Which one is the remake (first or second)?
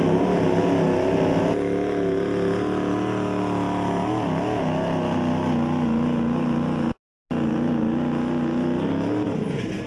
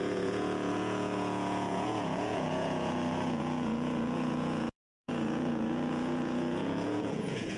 second